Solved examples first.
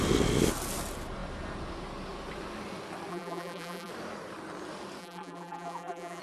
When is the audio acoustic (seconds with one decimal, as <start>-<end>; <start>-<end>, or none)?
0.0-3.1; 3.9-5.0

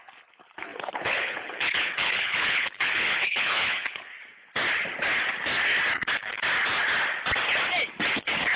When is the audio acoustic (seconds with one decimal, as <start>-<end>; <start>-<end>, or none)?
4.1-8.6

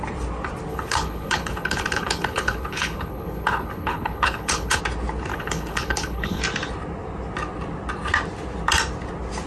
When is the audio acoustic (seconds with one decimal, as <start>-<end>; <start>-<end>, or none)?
0.0-0.7; 4.8-5.3; 6.4-9.5

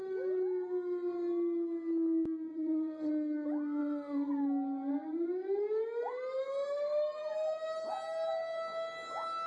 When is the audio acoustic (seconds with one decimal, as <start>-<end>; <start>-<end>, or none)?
0.0-2.5; 3.1-3.8; 4.3-9.5